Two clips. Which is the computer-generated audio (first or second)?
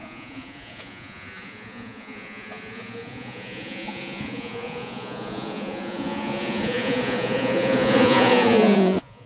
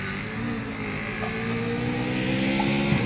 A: first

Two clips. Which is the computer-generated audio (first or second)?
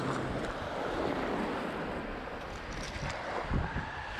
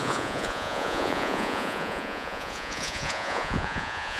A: second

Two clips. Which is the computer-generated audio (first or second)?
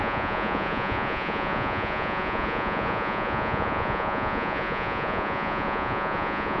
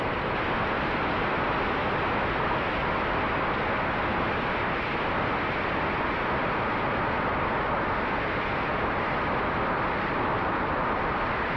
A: first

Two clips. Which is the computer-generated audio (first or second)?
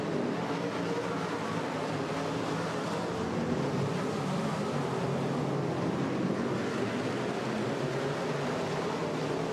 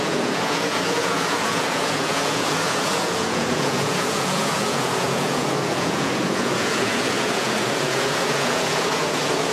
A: second